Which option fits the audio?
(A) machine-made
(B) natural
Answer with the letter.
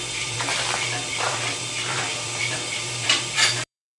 A